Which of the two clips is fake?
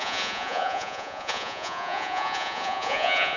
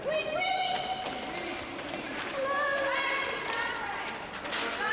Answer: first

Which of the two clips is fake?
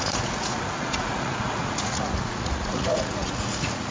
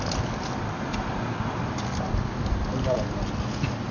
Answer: first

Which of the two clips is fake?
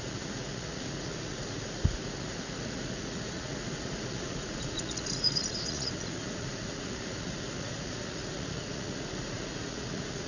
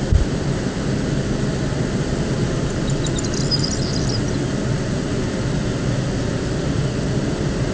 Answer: first